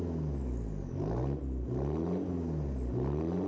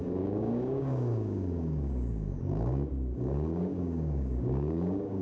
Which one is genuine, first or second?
first